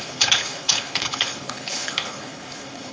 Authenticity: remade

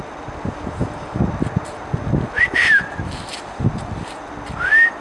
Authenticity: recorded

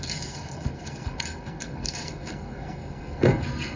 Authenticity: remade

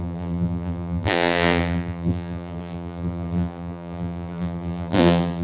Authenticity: remade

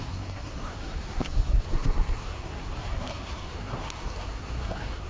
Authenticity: remade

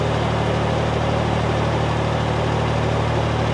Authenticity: recorded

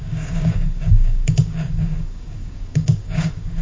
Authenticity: remade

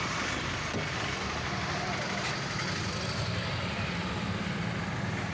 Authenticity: recorded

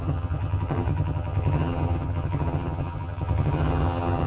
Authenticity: remade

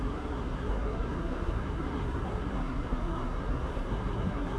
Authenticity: remade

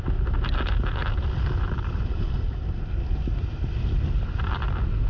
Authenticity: recorded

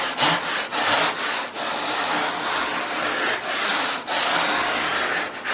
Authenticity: recorded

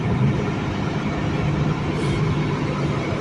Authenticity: remade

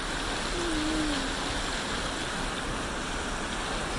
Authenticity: recorded